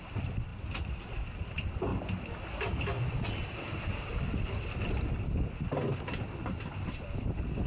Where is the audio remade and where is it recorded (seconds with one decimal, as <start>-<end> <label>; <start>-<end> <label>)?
0.0-7.7 recorded